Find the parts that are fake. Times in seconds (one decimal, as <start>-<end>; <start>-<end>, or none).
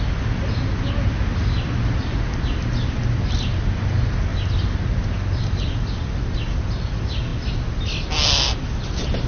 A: none